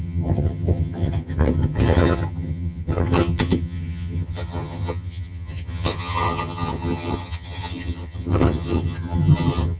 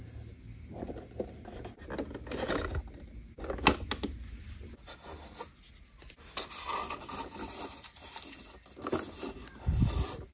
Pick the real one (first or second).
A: second